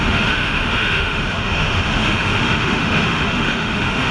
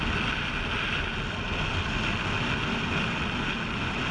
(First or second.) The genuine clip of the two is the second